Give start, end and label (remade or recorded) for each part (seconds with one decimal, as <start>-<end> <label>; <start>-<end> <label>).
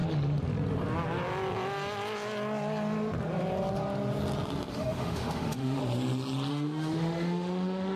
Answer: 0.0-4.7 recorded; 4.7-5.8 remade; 5.8-6.5 recorded; 6.5-8.0 remade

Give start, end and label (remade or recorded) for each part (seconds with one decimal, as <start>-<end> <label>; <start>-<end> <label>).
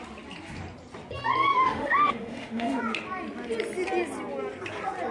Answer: 0.0-1.5 recorded; 1.5-2.8 remade; 2.8-5.1 recorded